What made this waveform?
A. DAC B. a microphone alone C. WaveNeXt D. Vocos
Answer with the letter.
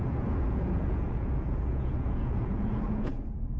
D